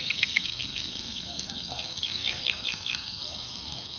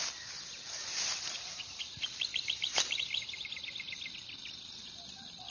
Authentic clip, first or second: second